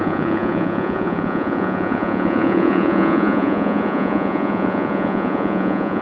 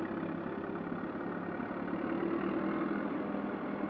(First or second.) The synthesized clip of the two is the first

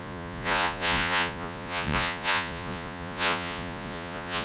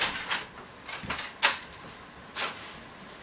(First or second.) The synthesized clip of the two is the first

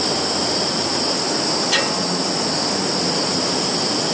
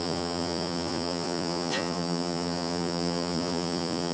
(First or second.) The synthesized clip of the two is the second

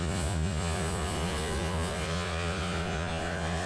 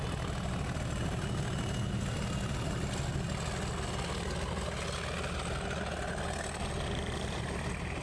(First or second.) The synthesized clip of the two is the first